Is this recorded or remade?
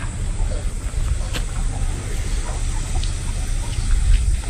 recorded